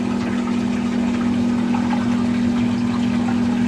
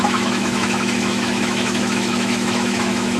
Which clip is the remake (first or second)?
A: second